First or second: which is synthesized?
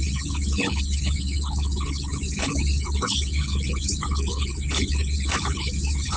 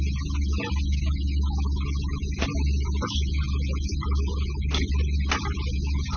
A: first